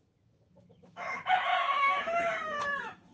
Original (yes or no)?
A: no